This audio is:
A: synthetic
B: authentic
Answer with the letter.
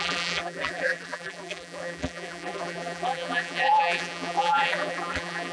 A